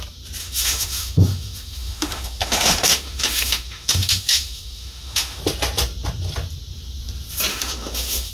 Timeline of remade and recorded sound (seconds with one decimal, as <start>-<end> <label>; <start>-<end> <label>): 0.0-0.4 recorded; 0.4-5.4 remade; 5.4-7.5 recorded; 7.5-8.3 remade